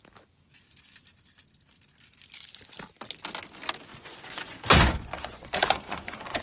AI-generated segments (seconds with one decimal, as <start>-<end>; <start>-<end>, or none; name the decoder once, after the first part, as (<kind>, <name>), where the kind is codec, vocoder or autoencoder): 3.9-6.4 (vocoder, Vocos)